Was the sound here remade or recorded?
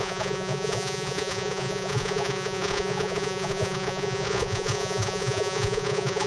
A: remade